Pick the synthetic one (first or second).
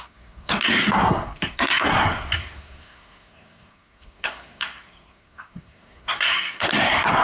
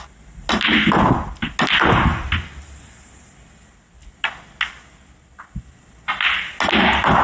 first